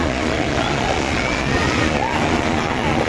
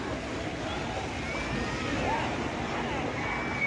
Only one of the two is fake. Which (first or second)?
first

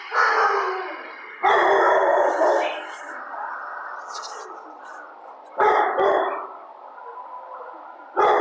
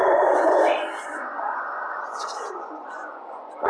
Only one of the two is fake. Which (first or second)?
second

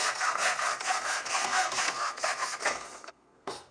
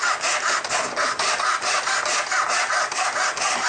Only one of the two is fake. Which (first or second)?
first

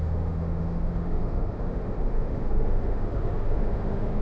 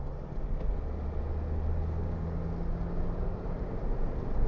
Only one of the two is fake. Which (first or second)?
first